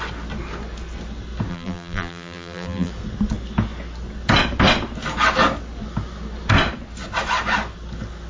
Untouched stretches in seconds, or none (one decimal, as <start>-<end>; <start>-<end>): 0.0-1.5; 2.9-8.3